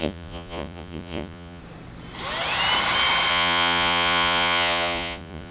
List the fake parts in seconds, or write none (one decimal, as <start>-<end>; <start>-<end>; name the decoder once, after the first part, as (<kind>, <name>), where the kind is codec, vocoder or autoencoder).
0.0-1.6 (vocoder, Vocos); 3.3-5.5